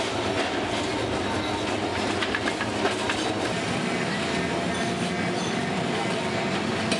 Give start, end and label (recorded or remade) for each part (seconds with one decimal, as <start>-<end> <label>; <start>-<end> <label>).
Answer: 0.0-7.0 recorded